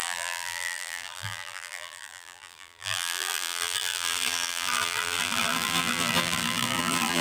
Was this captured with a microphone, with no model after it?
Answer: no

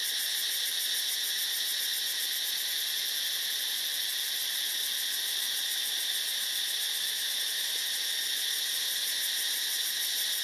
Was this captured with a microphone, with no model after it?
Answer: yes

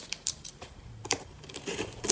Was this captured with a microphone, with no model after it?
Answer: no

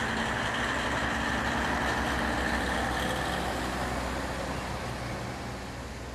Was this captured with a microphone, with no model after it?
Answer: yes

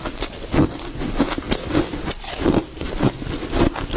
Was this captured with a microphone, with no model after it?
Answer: yes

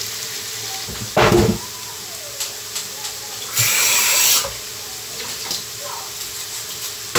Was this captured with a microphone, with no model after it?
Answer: yes